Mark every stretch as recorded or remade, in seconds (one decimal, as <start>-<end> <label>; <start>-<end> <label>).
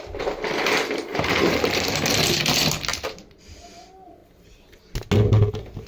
0.0-1.1 recorded; 1.1-1.7 remade; 1.7-2.9 recorded; 2.9-3.4 remade; 3.4-5.9 recorded